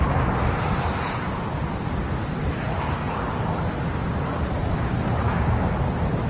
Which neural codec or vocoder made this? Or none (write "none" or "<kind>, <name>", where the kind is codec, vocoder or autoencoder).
none